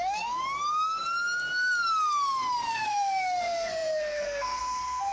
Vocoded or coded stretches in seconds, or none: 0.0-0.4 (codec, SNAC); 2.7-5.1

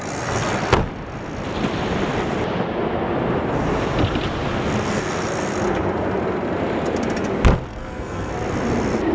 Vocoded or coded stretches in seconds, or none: 7.7-8.3 (codec, SNAC)

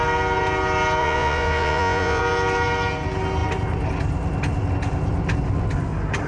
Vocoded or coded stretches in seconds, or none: 1.0-2.2 (vocoder, Vocos)